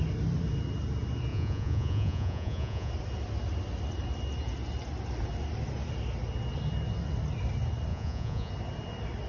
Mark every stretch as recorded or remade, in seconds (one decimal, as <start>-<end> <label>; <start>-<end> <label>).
0.0-1.3 recorded; 1.3-2.9 remade; 2.9-7.9 recorded; 7.9-8.5 remade; 8.5-9.3 recorded